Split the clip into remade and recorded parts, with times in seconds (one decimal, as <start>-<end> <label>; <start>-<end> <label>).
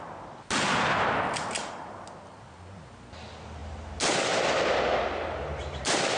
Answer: 0.0-6.2 recorded